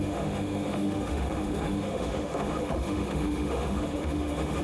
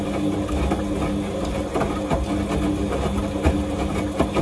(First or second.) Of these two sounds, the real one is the second